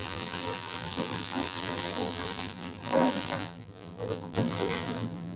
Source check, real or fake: fake